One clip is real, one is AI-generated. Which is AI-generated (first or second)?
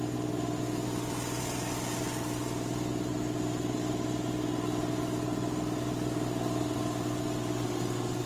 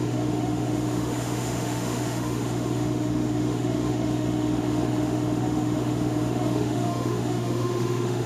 second